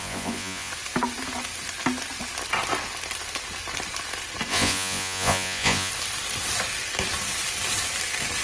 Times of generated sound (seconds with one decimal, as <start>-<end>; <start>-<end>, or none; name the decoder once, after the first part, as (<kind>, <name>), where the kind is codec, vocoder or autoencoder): 0.0-0.7 (vocoder, Vocos); 4.5-5.9

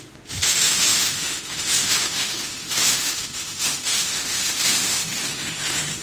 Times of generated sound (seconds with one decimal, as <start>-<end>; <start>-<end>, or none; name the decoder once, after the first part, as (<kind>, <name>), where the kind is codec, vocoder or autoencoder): 0.0-6.0 (autoencoder, DAC-VAE)

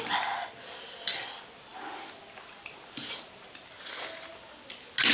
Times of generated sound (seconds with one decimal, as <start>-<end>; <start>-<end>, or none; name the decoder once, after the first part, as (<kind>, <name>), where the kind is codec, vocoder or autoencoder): none

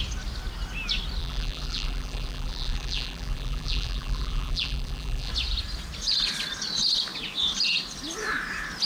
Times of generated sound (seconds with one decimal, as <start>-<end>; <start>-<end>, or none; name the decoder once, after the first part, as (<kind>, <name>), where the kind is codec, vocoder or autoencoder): 1.2-5.3 (vocoder, BigVGAN v2)

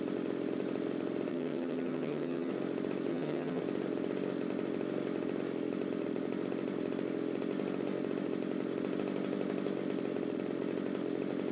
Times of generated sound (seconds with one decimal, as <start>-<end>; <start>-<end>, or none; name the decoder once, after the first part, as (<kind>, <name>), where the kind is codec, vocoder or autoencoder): 1.3-2.5 (vocoder, HiFi-GAN); 3.1-3.6

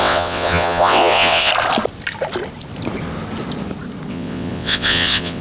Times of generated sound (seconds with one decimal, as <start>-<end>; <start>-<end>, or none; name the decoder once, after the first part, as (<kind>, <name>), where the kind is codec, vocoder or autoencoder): 0.0-1.5 (vocoder, WaveNeXt); 4.1-5.4

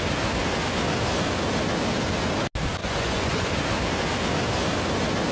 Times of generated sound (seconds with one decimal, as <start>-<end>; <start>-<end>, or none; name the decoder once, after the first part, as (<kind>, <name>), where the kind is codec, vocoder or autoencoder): 2.8-3.5 (vocoder, Vocos)

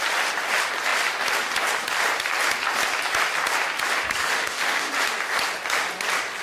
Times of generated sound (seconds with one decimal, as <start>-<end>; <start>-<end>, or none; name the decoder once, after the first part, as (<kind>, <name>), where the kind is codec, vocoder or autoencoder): 4.2-4.9 (autoencoder, DAC-VAE)